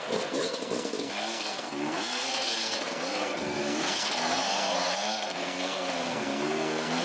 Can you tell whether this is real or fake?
fake